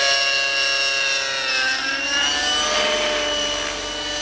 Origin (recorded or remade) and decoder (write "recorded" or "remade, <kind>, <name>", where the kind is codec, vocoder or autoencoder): recorded